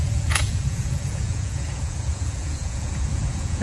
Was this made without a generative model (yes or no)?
no